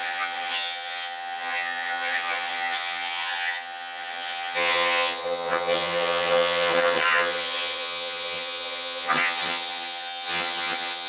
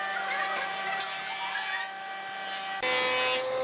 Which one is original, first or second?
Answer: second